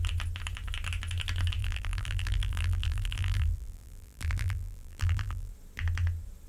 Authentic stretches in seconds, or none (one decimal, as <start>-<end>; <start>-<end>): 0.0-1.6; 5.5-6.5